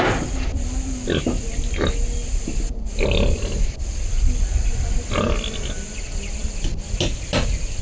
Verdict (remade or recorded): recorded